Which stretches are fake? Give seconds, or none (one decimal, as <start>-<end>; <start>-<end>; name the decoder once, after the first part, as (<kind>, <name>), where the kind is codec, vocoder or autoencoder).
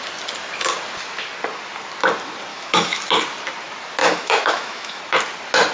2.5-3.0 (autoencoder, DAC-VAE); 4.0-5.0